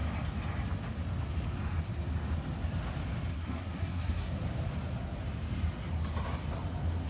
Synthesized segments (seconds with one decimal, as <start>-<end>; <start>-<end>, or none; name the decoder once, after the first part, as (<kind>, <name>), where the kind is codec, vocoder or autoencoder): 3.3-4.3 (codec, SNAC)

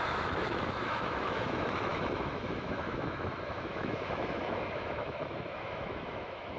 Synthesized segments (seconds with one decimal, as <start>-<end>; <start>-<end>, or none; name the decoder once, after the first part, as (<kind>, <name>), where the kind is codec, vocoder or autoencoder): 0.0-6.6 (autoencoder, DAC-VAE)

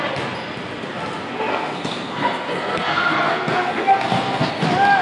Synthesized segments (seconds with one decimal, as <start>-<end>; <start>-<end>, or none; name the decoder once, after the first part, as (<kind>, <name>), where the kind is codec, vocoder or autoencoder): 1.5-4.5 (codec, SNAC)